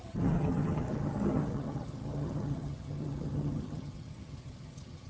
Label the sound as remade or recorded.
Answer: remade